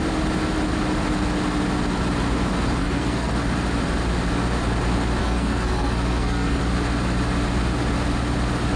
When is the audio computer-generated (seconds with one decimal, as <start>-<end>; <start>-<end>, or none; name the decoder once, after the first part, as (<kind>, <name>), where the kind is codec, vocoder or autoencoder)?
2.8-3.3 (codec, SNAC); 5.2-6.6